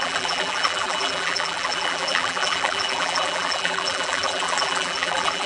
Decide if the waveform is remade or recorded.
remade